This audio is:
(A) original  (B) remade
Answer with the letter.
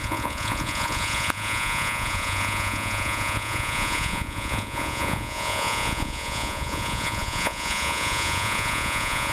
B